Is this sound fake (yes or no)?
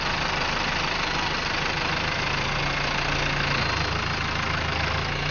no